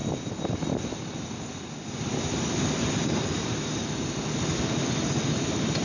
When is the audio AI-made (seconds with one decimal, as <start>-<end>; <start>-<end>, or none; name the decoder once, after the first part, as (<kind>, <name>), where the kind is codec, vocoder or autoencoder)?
none